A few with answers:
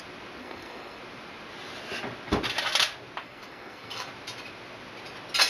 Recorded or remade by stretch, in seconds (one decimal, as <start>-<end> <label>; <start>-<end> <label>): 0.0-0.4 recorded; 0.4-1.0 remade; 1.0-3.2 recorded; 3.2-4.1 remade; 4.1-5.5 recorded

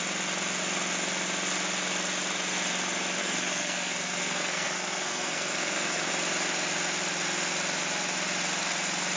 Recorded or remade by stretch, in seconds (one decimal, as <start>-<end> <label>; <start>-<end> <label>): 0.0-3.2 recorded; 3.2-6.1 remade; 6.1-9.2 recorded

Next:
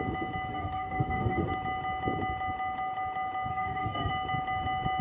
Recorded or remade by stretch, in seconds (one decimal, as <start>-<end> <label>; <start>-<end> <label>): 0.0-0.5 recorded; 0.5-1.5 remade; 1.5-3.5 recorded; 3.5-4.1 remade; 4.1-5.0 recorded

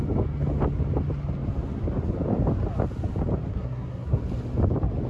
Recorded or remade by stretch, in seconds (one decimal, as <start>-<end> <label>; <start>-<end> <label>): 0.0-3.5 recorded; 3.5-4.2 remade; 4.2-5.1 recorded

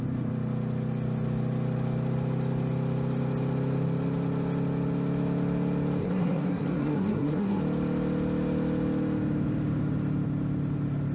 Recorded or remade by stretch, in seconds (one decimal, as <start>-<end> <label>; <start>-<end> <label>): 0.0-6.0 recorded; 6.0-7.6 remade; 7.6-11.1 recorded

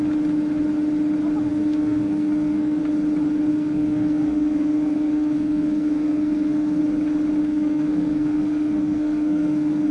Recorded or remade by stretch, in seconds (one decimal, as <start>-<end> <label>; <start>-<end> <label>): 0.0-1.5 recorded; 1.5-2.8 remade; 2.8-3.5 recorded; 3.5-6.8 remade; 6.8-7.4 recorded; 7.4-9.9 remade

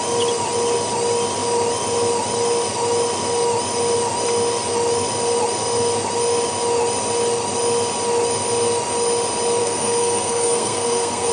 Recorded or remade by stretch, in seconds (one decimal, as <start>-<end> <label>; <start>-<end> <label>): 0.0-9.6 recorded; 9.6-11.3 remade